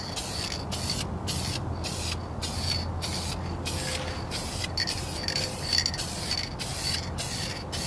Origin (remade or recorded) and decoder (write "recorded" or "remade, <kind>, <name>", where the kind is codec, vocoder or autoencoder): recorded